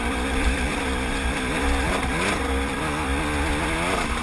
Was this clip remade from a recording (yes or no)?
no